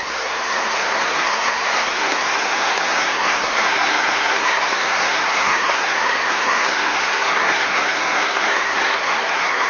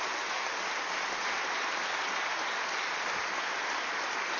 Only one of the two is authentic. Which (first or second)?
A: second